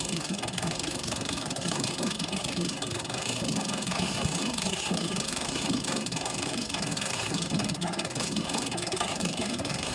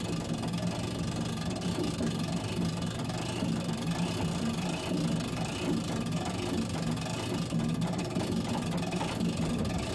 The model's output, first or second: first